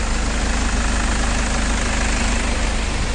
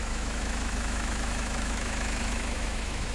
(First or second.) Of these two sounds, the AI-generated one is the second